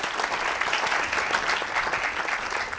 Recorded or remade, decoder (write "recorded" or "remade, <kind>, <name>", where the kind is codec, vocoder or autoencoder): recorded